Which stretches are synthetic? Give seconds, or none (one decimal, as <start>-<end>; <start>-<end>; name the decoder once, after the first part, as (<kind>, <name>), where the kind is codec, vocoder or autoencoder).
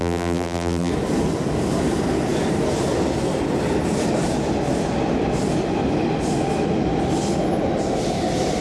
0.0-0.9 (vocoder, BigVGAN v2)